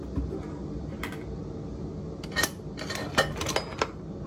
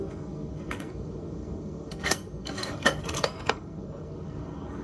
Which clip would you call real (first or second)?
first